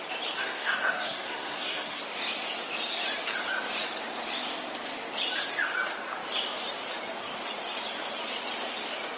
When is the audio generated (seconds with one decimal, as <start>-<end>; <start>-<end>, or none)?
0.4-2.0